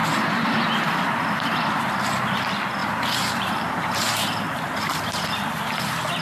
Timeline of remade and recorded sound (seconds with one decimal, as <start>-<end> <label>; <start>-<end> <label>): 0.0-2.8 recorded; 2.8-4.8 remade; 4.8-6.2 recorded